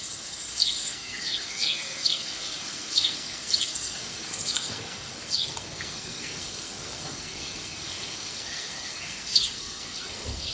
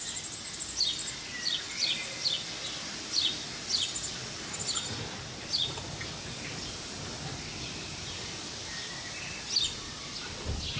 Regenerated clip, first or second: first